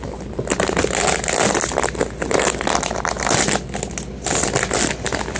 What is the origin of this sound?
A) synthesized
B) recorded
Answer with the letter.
B